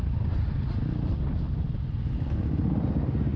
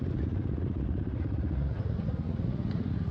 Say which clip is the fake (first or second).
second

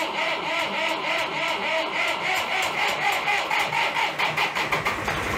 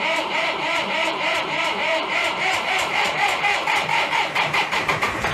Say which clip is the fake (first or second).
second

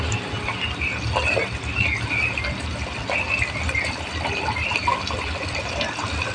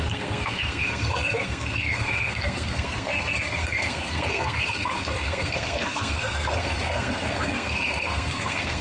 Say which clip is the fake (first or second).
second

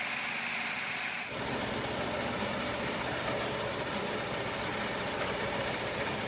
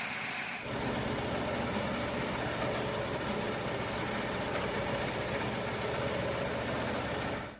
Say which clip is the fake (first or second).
first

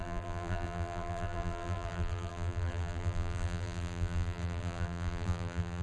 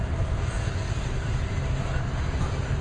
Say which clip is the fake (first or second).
first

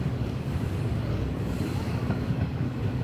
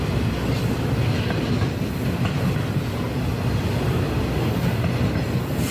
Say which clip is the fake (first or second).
first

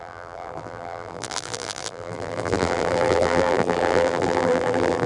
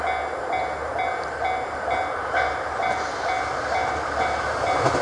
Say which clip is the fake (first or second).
first